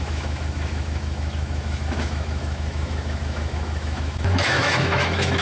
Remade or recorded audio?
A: remade